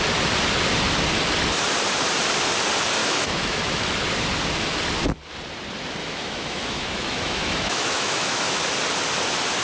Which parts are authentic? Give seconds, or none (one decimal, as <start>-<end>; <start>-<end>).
0.0-3.0; 3.9-6.0; 8.6-9.6